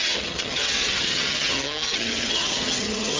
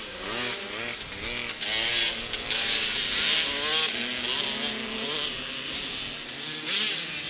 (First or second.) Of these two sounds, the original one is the second